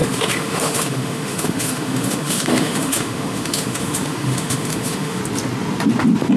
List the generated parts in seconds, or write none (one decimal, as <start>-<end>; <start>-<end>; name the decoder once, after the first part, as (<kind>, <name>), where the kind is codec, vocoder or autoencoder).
0.0-5.2 (autoencoder, DAC-VAE)